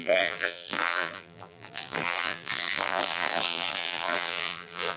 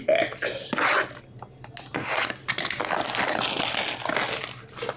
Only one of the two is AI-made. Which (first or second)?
first